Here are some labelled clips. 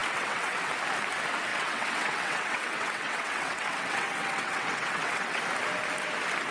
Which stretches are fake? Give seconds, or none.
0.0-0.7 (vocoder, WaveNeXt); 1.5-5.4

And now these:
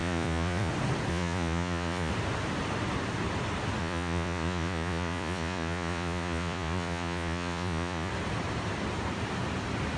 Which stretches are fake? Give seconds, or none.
0.0-0.7 (vocoder, Vocos); 1.1-2.1; 3.8-8.1